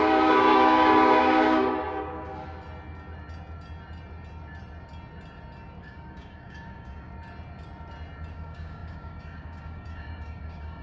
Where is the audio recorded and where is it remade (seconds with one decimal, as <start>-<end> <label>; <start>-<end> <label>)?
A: 0.0-2.3 remade; 2.3-5.8 recorded; 5.8-7.1 remade; 7.1-8.3 recorded; 8.3-10.8 remade